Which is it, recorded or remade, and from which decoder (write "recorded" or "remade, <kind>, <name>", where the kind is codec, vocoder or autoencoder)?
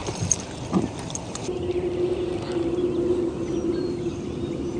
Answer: recorded